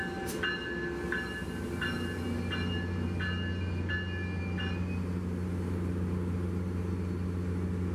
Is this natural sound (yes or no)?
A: yes